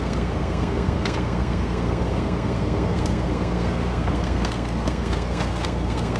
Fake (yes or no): yes